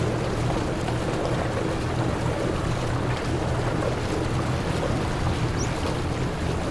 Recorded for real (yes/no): yes